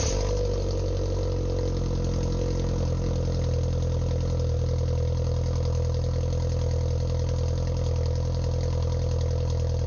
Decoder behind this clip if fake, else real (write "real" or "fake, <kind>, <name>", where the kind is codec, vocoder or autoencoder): real